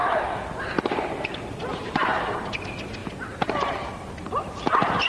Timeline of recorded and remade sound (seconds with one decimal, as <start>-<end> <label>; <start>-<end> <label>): 0.0-5.1 recorded